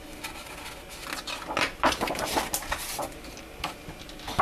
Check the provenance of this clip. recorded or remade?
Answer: recorded